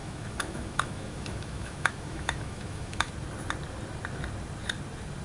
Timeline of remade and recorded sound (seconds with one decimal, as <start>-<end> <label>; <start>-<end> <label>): 0.0-3.1 remade; 3.1-5.2 recorded